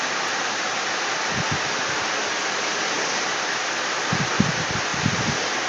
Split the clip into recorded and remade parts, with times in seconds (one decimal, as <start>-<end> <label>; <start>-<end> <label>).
0.0-5.7 recorded